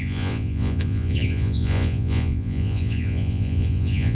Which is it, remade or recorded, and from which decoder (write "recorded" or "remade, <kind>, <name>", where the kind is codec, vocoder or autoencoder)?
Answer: remade, vocoder, Vocos